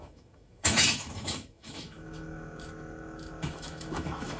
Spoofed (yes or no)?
yes